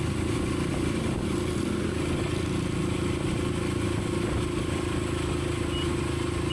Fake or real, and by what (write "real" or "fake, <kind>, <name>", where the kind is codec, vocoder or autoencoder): real